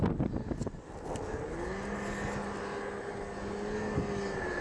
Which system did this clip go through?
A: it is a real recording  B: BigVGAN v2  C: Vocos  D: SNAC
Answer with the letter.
A